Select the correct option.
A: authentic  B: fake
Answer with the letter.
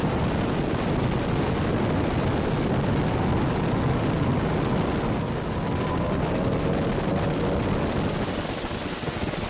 A